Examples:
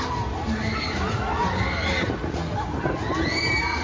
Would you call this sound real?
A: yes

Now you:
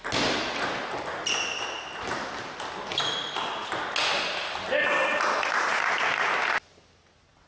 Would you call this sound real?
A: yes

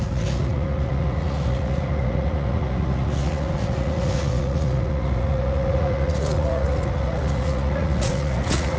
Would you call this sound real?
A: no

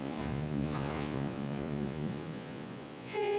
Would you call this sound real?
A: no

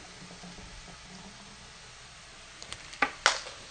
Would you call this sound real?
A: yes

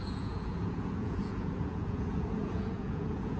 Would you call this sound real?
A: no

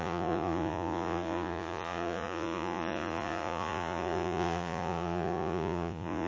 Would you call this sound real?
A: no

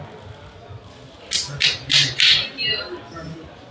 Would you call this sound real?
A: yes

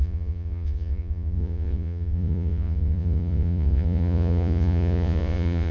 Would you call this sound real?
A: no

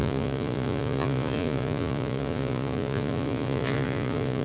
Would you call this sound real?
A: no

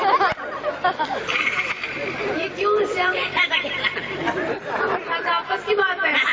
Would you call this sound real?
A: yes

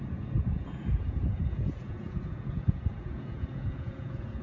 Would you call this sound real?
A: no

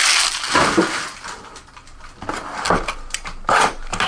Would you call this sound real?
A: yes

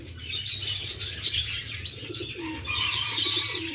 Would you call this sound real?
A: yes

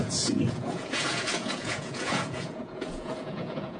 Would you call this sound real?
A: no